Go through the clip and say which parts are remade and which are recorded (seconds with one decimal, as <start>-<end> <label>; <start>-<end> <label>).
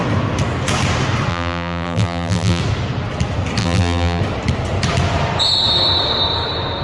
0.0-1.3 recorded; 1.3-2.6 remade; 2.6-3.6 recorded; 3.6-4.2 remade; 4.2-6.8 recorded